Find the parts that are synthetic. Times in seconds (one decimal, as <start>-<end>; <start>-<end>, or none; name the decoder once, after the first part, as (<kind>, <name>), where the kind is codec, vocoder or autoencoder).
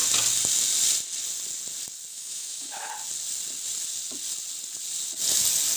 2.1-2.9 (autoencoder, DAC-VAE)